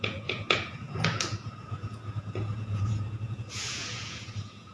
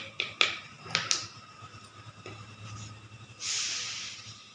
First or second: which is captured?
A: second